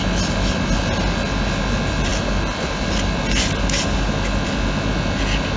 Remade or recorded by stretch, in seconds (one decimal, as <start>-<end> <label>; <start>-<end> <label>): 0.0-5.6 recorded